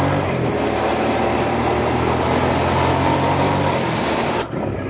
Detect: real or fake real